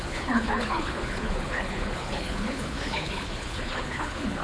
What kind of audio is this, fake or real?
fake